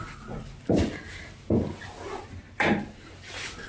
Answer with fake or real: real